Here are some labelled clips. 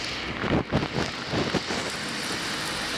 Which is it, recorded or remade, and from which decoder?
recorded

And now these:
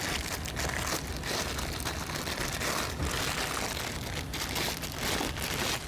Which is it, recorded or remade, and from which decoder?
recorded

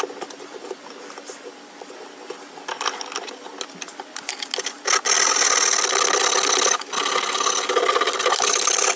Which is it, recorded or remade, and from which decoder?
recorded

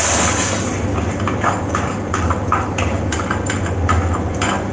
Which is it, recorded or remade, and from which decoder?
recorded